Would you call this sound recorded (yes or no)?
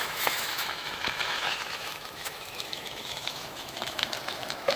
no